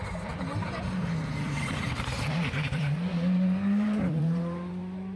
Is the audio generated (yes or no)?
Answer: yes